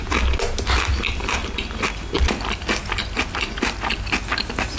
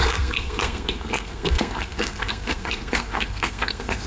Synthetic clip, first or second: second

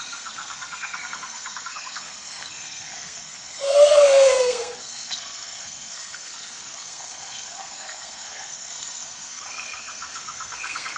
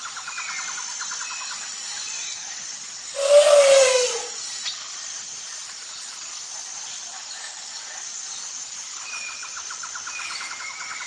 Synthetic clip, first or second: first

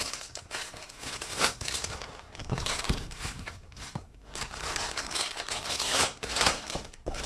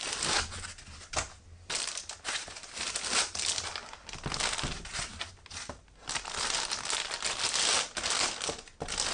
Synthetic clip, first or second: first